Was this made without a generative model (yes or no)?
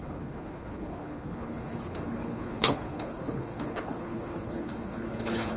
no